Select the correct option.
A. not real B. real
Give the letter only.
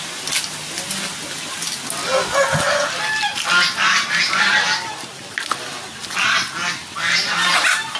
B